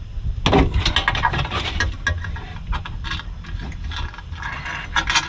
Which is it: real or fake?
real